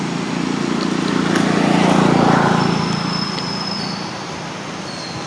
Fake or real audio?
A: real